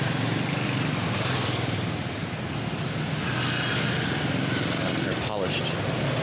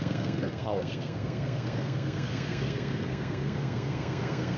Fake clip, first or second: second